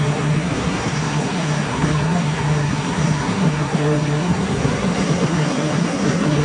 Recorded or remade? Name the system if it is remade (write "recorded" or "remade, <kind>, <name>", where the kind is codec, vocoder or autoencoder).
remade, codec, SNAC